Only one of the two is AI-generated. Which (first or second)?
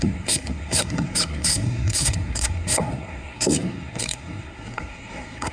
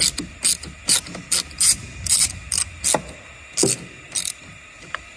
first